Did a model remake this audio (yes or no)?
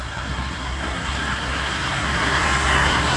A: yes